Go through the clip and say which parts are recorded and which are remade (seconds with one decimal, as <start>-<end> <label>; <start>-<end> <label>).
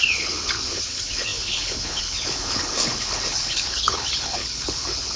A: 0.0-5.2 remade